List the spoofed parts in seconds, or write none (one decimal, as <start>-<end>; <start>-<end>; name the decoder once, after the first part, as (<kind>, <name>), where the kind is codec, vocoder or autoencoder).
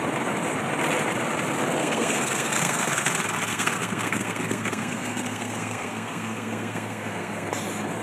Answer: 1.8-3.1 (codec, SNAC); 3.5-7.5